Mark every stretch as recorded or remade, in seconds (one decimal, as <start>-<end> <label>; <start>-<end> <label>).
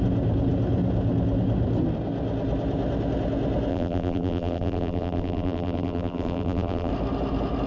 0.0-3.7 recorded; 3.7-6.9 remade; 6.9-7.7 recorded